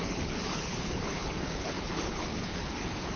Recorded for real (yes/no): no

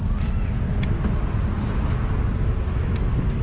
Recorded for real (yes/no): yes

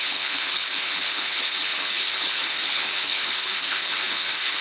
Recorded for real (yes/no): no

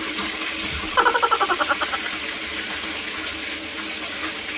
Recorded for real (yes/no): yes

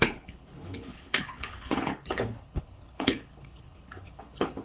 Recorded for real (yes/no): no